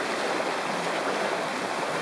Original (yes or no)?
yes